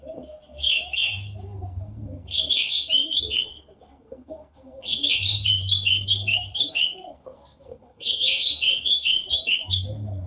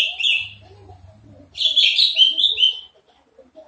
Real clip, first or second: second